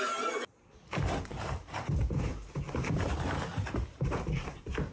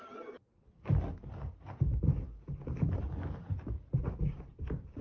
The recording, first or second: second